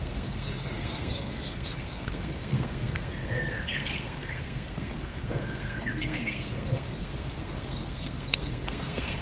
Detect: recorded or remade remade